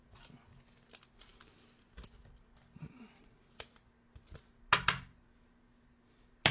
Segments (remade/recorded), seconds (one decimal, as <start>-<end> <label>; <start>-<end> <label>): 0.0-6.5 recorded